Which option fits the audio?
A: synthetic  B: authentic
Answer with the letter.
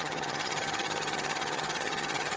A